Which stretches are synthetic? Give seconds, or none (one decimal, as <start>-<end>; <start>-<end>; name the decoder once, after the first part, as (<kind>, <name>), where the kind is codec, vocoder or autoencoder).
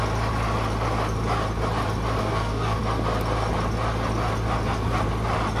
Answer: 2.2-2.8 (codec, DAC)